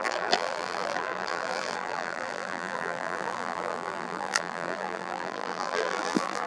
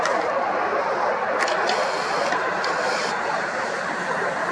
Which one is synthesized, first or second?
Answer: first